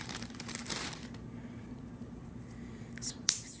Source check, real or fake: fake